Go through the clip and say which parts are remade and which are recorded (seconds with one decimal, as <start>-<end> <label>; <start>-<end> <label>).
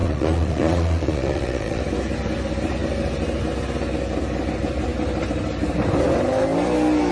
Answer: 0.0-1.8 remade; 1.8-7.1 recorded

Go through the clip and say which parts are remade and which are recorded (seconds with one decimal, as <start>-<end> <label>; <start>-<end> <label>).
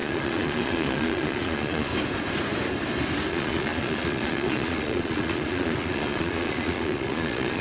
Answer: 0.0-1.9 remade; 1.9-3.3 recorded; 3.3-7.6 remade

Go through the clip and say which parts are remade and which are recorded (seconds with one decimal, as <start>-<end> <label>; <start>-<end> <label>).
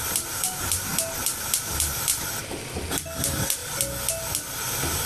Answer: 0.0-0.9 remade; 0.9-1.4 recorded; 1.4-2.1 remade; 2.1-3.2 recorded; 3.2-3.6 remade; 3.6-5.1 recorded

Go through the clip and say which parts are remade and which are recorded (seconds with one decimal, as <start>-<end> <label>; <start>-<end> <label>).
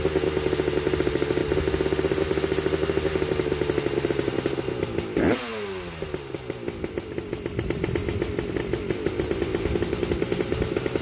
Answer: 0.0-11.0 recorded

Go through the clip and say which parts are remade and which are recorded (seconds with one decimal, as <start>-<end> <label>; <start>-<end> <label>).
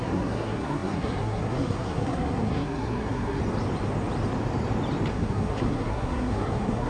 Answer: 0.0-3.4 remade; 3.4-5.1 recorded; 5.1-6.9 remade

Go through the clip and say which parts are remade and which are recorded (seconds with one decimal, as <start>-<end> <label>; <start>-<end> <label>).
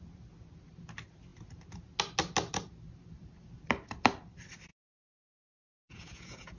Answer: 0.0-4.7 recorded; 4.7-6.6 remade